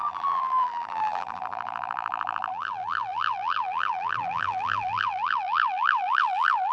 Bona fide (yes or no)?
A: no